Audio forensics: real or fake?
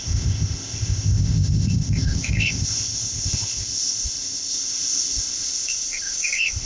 fake